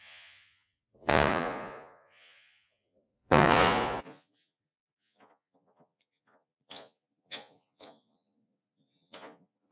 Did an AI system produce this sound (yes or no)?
yes